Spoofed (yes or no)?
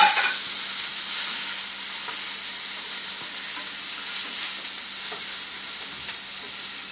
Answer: no